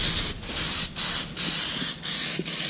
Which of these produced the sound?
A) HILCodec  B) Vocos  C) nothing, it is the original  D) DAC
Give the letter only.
C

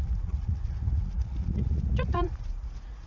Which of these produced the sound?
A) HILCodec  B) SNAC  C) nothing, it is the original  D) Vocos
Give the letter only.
D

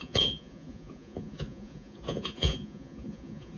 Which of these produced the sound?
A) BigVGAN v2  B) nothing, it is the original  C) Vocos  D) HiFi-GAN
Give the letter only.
C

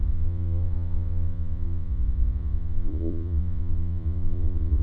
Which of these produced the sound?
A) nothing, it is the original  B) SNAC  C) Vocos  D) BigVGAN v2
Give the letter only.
C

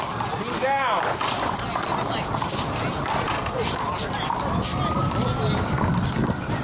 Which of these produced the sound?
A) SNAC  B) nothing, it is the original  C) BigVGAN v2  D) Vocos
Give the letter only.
B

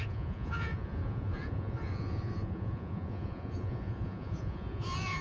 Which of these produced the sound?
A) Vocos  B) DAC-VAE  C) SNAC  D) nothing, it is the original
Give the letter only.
A